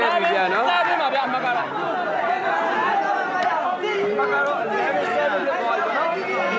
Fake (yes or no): no